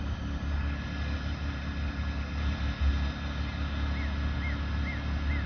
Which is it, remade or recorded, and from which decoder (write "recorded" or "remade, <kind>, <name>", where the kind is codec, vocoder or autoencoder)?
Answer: recorded